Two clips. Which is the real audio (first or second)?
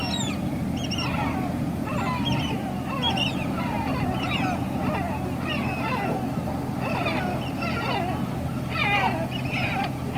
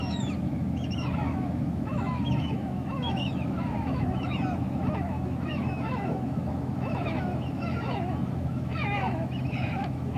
first